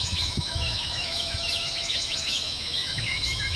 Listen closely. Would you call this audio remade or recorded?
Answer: remade